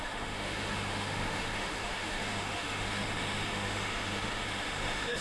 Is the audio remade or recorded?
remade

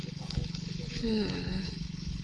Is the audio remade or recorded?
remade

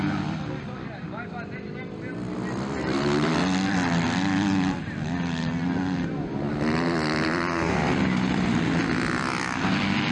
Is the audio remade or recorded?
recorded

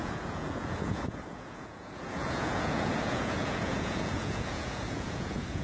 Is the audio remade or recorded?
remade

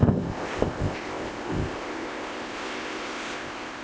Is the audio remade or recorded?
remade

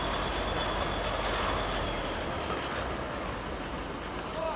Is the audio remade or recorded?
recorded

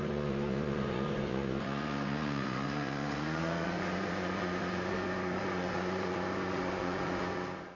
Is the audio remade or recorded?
remade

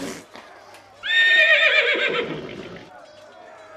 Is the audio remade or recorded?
recorded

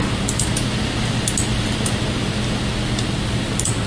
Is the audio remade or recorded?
recorded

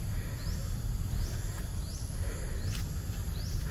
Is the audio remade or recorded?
recorded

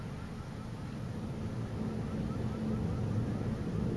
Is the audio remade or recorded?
recorded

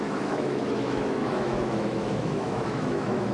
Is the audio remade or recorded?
remade